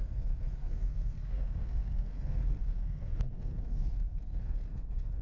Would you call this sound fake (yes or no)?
yes